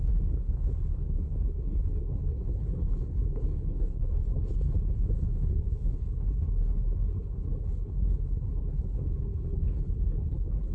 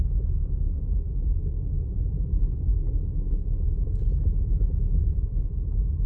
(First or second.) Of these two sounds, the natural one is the second